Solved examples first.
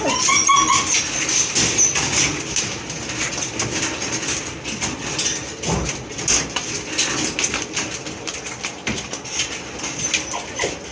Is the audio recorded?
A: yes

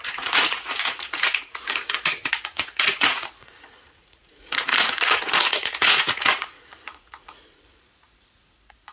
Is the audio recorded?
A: no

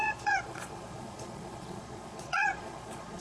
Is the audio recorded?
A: no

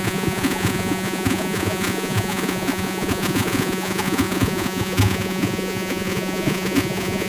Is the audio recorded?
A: no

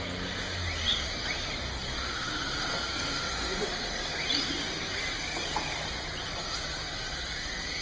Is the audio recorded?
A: yes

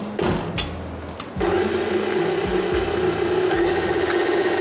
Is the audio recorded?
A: yes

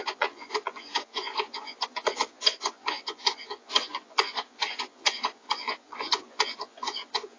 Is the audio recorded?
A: no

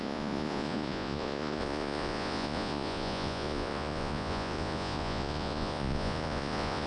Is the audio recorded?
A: no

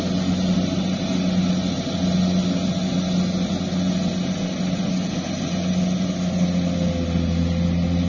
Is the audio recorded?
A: yes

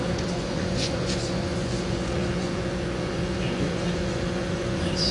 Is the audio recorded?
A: no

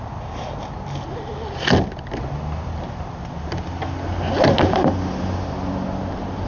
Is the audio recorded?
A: yes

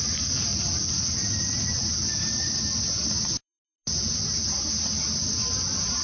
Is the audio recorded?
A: yes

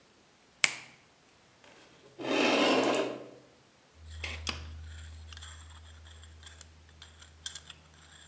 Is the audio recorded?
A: yes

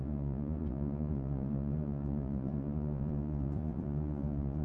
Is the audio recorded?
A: no